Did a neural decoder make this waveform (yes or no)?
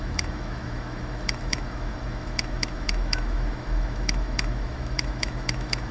yes